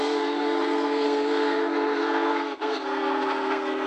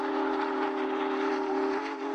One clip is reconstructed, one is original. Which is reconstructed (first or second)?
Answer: first